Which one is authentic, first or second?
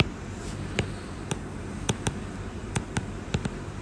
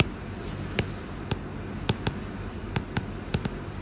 second